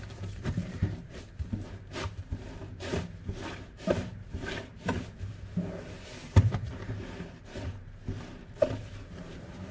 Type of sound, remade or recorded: remade